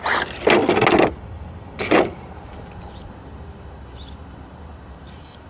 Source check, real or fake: real